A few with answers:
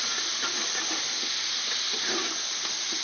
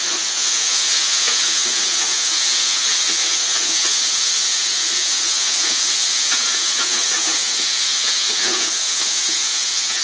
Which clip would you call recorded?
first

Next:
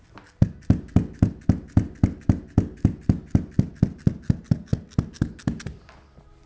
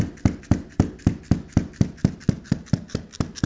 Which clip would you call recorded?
first